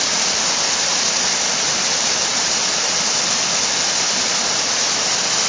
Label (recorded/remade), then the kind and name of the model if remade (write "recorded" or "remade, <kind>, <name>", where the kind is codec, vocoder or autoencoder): recorded